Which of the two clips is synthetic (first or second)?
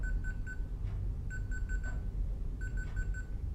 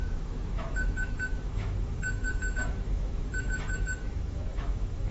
second